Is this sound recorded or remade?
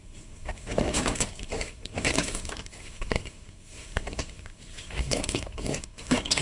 remade